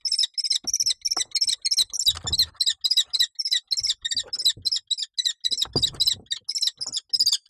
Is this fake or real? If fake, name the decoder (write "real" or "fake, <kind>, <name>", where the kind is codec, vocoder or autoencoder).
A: real